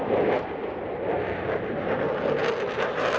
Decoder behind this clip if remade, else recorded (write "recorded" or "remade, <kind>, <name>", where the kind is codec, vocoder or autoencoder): recorded